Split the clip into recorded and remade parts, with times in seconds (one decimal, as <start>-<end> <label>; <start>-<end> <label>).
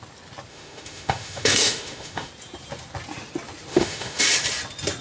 0.0-0.5 recorded; 0.5-2.3 remade; 2.3-3.7 recorded; 3.7-4.2 remade; 4.2-5.0 recorded